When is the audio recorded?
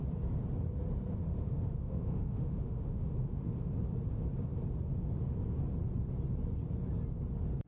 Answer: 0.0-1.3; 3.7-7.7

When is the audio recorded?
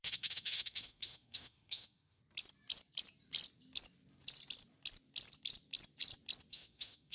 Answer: 2.2-6.5